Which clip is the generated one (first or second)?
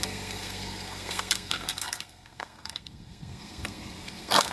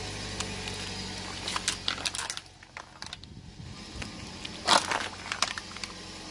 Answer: first